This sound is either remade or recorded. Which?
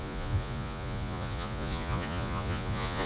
remade